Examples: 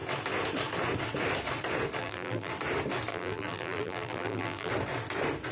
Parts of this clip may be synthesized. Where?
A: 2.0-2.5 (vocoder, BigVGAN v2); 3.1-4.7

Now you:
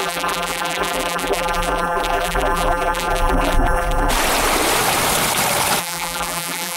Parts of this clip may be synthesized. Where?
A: 0.0-4.1 (vocoder, BigVGAN v2); 5.8-6.8

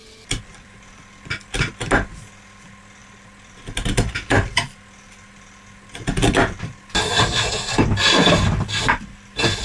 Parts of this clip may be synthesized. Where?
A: 0.0-1.7 (vocoder, BigVGAN v2); 3.0-7.2